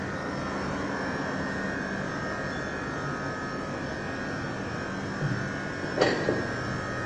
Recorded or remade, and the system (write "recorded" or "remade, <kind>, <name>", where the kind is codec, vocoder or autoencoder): recorded